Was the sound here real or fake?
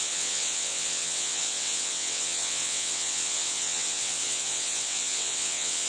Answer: fake